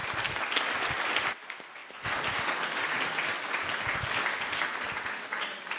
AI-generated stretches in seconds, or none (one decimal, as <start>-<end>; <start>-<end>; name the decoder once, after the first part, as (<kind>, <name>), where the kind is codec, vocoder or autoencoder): 0.6-1.8 (vocoder, BigVGAN v2); 4.6-5.8